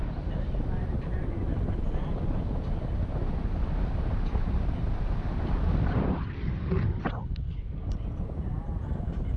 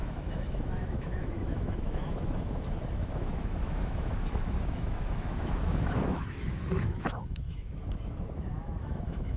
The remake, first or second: second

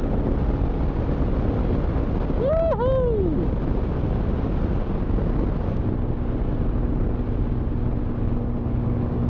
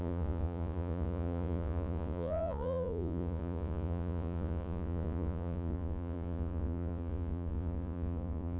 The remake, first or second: second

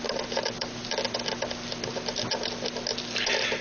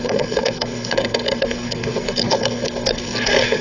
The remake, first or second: second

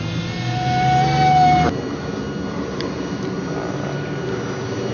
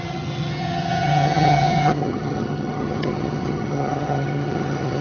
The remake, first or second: second